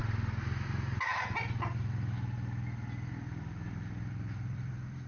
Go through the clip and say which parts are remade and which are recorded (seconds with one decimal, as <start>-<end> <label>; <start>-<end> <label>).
0.0-3.1 recorded; 3.1-5.1 remade